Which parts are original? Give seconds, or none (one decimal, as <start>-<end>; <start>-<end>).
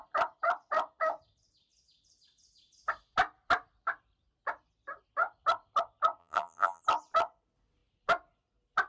0.0-6.2; 6.8-8.9